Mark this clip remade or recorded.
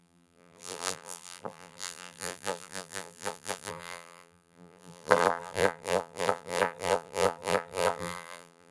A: remade